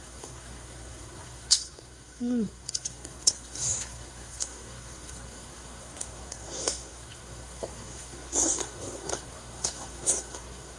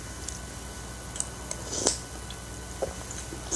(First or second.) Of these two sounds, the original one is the second